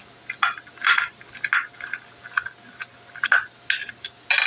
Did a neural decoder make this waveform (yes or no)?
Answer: no